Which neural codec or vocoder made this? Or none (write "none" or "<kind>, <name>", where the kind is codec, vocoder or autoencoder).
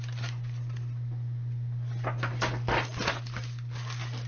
none